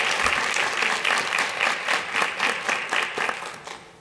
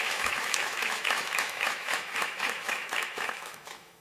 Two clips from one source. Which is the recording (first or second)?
first